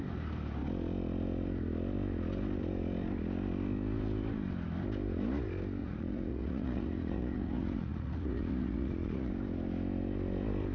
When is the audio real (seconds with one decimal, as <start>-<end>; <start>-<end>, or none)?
0.0-5.8; 9.3-10.7